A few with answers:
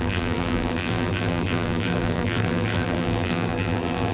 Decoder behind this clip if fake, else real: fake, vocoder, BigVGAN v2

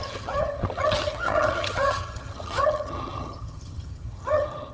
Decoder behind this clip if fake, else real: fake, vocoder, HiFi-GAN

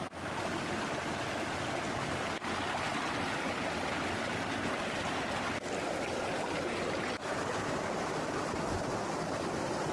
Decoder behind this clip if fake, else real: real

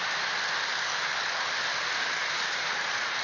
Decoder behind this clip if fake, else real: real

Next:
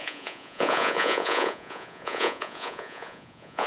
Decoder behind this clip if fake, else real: fake, vocoder, Vocos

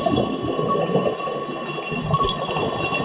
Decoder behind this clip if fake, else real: real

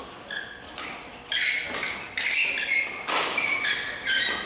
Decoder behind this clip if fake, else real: real